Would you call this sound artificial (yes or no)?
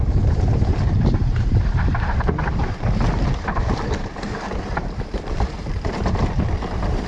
yes